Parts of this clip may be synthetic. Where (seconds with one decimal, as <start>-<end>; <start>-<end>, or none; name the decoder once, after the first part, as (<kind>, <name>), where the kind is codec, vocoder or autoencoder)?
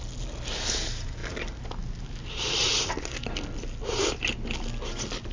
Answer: none